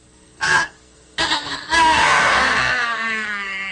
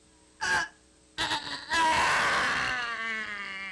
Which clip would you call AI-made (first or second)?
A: first